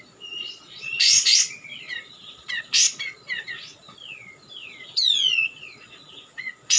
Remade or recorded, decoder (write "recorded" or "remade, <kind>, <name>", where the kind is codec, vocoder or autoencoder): remade, vocoder, Vocos